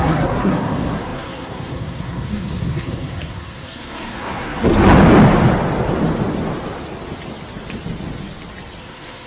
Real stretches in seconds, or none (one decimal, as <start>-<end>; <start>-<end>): 4.7-8.8